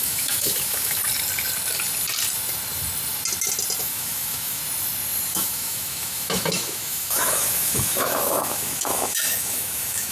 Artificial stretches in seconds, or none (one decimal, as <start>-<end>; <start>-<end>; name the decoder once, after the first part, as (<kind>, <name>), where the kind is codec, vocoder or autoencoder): 0.0-1.0 (autoencoder, DAC-VAE); 3.8-4.6; 5.3-10.1